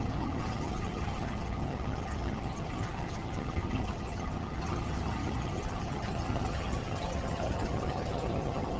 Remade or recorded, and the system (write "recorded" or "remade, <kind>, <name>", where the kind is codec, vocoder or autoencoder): remade, vocoder, HiFi-GAN